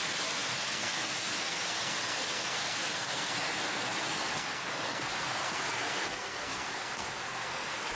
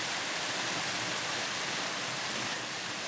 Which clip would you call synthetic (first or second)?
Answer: first